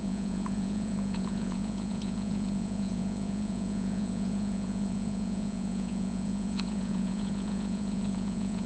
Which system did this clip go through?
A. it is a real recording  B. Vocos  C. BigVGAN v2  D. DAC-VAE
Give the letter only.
B